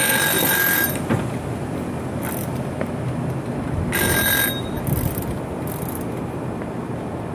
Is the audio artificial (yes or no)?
no